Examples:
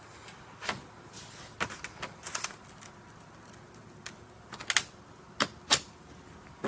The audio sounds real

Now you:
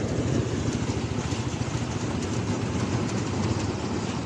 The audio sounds real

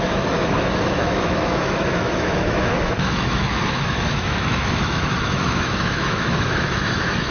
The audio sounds fake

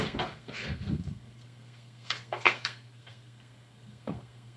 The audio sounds fake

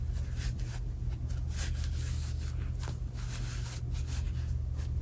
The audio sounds real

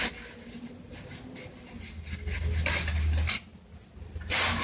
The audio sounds real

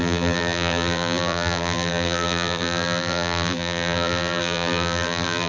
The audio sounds fake